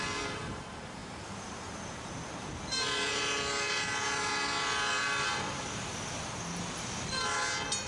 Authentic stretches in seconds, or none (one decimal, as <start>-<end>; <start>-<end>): 0.0-1.0; 2.6-7.9